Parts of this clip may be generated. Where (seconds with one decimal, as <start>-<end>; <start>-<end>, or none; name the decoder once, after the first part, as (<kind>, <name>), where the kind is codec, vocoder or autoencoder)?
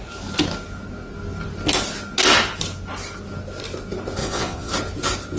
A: 4.2-4.7 (vocoder, Vocos)